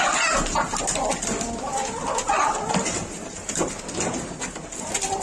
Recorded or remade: recorded